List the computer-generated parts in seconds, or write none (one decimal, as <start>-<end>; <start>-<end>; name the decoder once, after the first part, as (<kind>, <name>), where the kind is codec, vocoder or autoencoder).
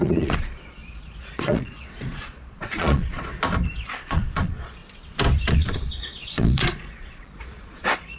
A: 0.0-3.3 (vocoder, Vocos); 4.0-4.8; 5.5-8.2